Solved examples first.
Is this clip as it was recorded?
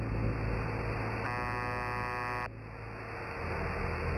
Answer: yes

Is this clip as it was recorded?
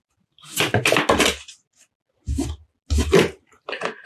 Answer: yes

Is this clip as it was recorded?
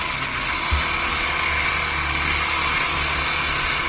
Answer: yes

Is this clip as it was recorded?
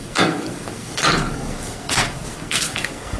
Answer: no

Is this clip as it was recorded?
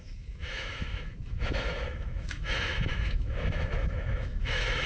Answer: no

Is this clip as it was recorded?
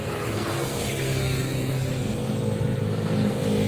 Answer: no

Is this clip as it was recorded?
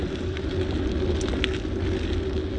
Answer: yes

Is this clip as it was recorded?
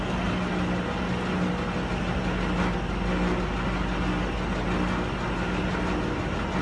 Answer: yes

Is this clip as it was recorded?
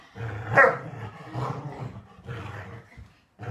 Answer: yes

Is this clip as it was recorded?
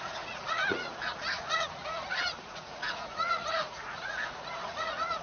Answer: no